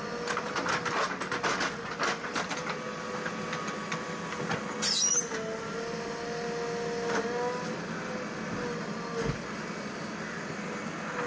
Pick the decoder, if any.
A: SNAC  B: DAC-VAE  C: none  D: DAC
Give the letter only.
C